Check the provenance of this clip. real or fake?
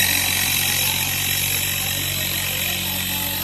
real